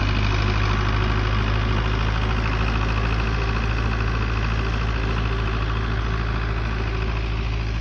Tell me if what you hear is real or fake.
real